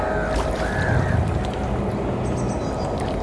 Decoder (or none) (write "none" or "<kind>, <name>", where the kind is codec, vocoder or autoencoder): none